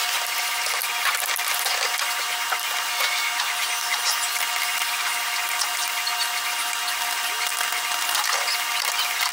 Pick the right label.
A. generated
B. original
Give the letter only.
A